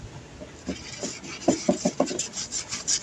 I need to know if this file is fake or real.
real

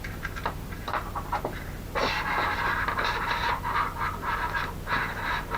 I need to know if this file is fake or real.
fake